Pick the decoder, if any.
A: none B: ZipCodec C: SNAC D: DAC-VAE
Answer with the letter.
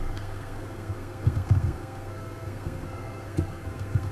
C